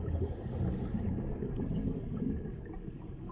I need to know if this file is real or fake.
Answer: fake